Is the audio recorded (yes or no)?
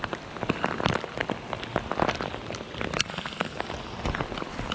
yes